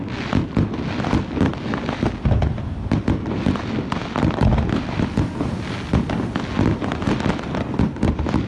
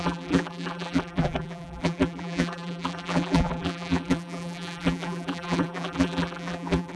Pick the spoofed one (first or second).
second